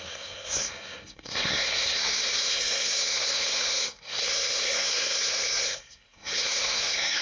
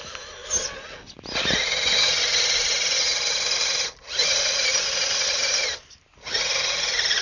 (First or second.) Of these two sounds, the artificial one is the first